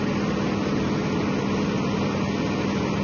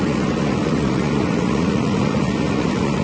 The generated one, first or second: second